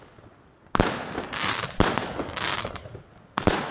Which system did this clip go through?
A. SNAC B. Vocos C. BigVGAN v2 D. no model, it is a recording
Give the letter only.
D